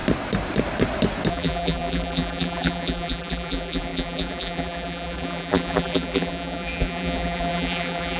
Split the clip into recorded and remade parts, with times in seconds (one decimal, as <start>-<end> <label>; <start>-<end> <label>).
0.0-1.3 recorded; 1.3-8.2 remade